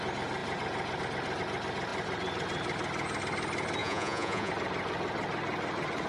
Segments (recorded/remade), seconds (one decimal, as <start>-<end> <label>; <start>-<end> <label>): 0.0-3.8 recorded; 3.8-4.5 remade; 4.5-6.1 recorded